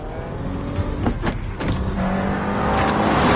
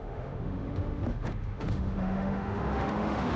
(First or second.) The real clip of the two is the first